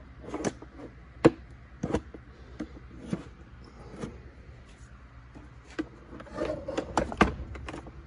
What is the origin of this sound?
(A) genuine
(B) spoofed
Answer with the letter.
A